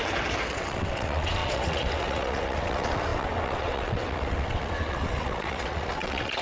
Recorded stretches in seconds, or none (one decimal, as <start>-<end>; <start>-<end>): 0.0-0.5